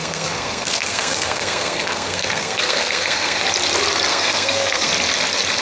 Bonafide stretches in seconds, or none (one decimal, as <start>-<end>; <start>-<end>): 3.4-4.1; 4.9-5.6